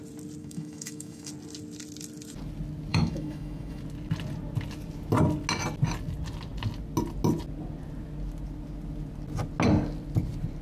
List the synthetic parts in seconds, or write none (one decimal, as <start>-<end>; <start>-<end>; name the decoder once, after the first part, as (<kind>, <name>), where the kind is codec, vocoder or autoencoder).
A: 0.4-1.3 (autoencoder, DAC-VAE); 2.9-3.8